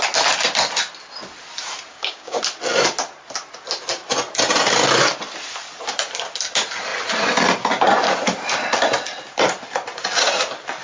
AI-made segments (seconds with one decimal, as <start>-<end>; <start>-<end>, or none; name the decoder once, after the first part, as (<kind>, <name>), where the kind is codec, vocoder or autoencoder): 1.9-2.4 (codec, DAC)